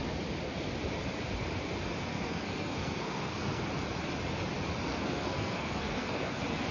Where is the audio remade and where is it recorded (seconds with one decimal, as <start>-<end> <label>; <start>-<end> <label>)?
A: 0.0-2.1 recorded; 2.1-3.6 remade; 3.6-4.9 recorded; 4.9-6.7 remade